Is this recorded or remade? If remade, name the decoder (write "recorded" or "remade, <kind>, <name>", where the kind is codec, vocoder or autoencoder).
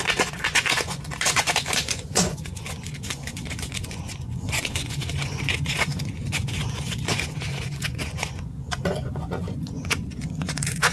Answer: remade, vocoder, Vocos